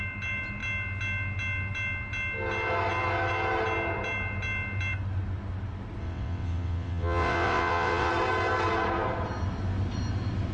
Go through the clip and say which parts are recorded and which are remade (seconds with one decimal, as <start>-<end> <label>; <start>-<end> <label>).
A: 0.0-6.0 recorded; 6.0-8.1 remade; 8.1-10.5 recorded